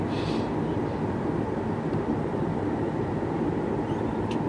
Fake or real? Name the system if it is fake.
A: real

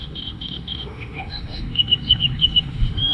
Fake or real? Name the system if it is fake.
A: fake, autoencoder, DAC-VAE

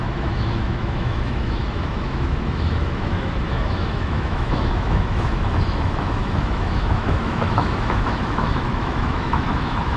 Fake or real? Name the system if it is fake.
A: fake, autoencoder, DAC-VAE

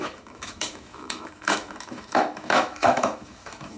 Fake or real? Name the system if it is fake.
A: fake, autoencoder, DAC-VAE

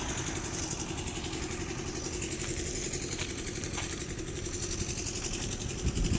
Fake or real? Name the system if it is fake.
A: real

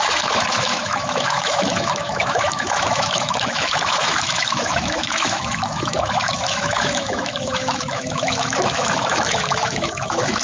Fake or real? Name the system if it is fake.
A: fake, autoencoder, DAC-VAE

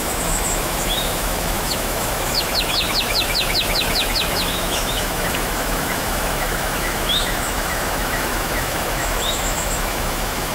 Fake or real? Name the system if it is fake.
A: fake, autoencoder, DAC-VAE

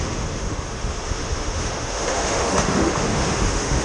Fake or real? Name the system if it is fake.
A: fake, autoencoder, DAC-VAE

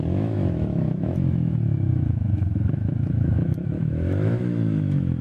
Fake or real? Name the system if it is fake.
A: fake, autoencoder, DAC-VAE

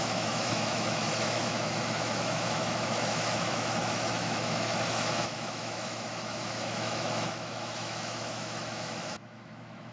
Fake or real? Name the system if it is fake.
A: fake, autoencoder, DAC-VAE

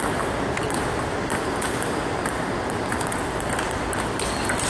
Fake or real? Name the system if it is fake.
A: real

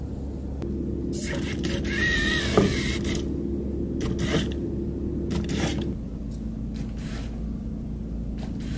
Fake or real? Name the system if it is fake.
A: real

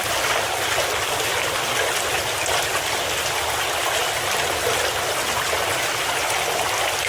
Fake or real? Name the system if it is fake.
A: real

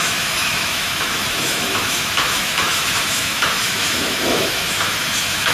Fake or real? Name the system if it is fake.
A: fake, autoencoder, DAC-VAE